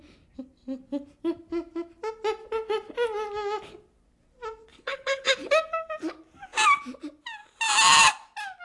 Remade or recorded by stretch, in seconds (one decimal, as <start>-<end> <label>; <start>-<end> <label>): 0.0-4.7 recorded; 4.7-5.5 remade; 5.5-8.6 recorded